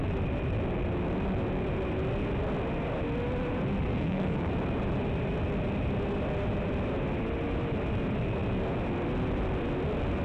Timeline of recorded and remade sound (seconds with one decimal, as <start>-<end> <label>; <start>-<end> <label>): 0.0-3.9 recorded; 3.9-4.5 remade; 4.5-10.2 recorded